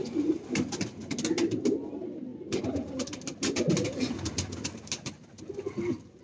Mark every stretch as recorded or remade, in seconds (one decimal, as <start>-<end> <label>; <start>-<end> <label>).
0.0-6.2 recorded